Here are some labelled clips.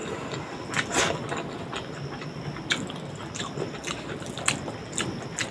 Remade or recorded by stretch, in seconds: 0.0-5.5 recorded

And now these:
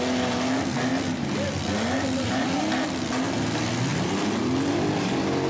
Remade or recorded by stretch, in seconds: 0.0-5.5 recorded

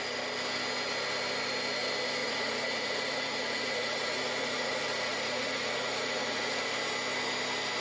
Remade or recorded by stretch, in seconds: 0.0-2.2 recorded; 2.2-6.7 remade; 6.7-7.8 recorded

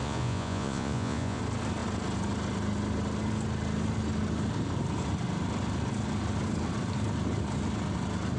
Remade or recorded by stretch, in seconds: 0.0-1.4 remade; 1.4-8.4 recorded

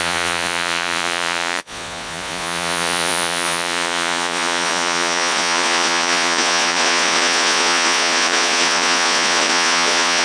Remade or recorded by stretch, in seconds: 0.0-10.2 remade

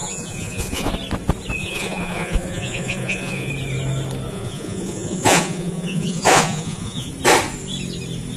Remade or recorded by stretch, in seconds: 0.0-0.9 remade; 0.9-1.6 recorded; 1.6-3.5 remade; 3.5-4.3 recorded; 4.3-7.1 remade; 7.1-8.4 recorded

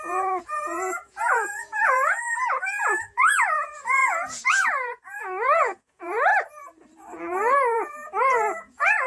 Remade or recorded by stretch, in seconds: 0.0-6.3 remade; 6.3-7.2 recorded; 7.2-9.1 remade